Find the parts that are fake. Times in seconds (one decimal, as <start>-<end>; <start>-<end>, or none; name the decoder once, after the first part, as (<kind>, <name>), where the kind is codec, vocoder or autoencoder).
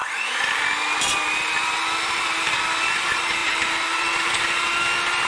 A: 3.4-4.4 (vocoder, BigVGAN v2)